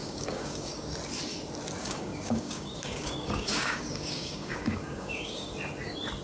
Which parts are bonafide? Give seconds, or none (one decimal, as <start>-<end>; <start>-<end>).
0.9-1.8; 5.5-6.2